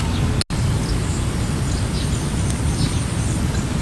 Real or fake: real